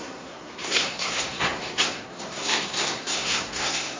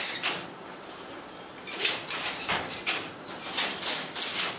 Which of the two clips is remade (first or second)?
first